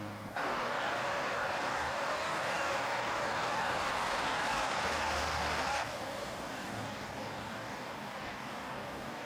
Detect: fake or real fake